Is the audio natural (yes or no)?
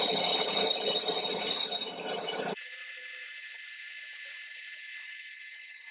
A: yes